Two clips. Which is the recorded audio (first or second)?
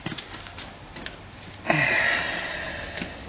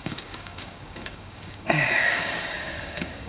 first